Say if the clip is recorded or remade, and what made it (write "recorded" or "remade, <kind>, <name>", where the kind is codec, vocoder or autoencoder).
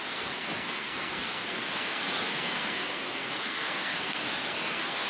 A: remade, codec, SNAC